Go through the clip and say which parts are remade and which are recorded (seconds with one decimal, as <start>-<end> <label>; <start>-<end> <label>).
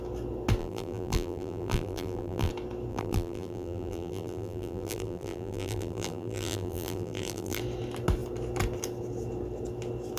0.0-0.6 recorded; 0.6-2.5 remade; 2.5-2.9 recorded; 2.9-7.6 remade; 7.6-10.2 recorded